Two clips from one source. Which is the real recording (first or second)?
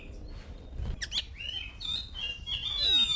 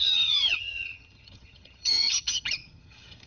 first